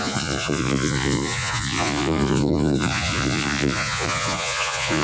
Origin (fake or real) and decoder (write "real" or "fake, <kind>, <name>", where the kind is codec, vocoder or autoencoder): fake, vocoder, Vocos